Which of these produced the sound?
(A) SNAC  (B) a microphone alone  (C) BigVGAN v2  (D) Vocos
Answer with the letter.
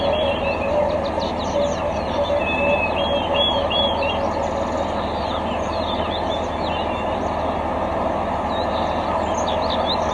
B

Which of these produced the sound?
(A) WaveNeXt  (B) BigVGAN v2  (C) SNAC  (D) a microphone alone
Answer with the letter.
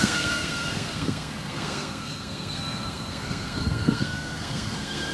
C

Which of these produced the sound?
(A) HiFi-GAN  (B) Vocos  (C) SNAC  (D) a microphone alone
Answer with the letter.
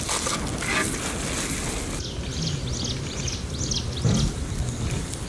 D